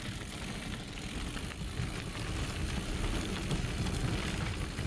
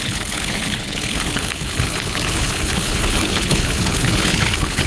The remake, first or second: second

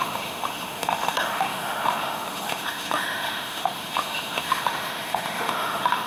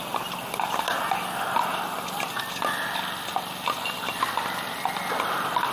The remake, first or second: first